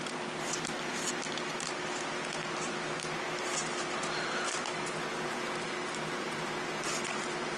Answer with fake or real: real